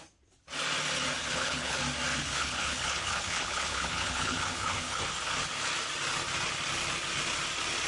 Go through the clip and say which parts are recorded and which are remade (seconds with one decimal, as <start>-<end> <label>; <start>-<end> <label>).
0.0-1.2 recorded; 1.2-1.8 remade; 1.8-2.2 recorded; 2.2-5.0 remade; 5.0-7.9 recorded